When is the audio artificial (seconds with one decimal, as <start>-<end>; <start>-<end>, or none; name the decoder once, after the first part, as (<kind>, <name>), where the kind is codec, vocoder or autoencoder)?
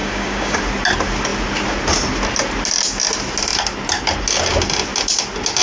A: 0.0-0.6 (codec, DAC)